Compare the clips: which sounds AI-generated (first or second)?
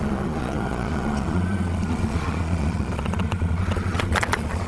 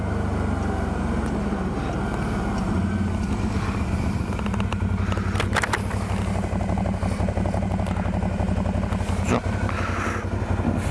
first